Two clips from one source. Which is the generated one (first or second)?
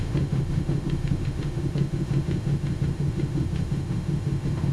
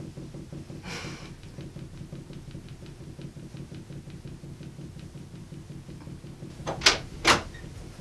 first